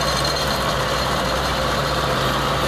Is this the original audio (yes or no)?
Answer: no